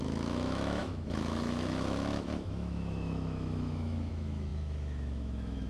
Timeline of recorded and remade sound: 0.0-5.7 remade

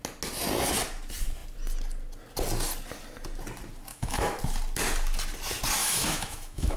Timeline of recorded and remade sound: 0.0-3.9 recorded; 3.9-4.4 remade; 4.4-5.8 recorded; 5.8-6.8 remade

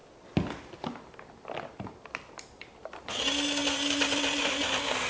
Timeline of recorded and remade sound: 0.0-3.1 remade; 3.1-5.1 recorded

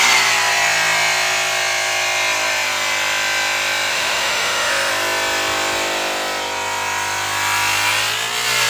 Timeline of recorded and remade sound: 0.0-3.9 recorded; 3.9-4.9 remade; 4.9-8.7 recorded